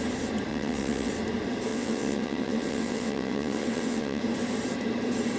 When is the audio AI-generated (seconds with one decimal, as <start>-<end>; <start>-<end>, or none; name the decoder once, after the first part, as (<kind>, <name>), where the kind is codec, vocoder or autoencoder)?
0.5-1.1 (vocoder, WaveNeXt); 1.7-4.2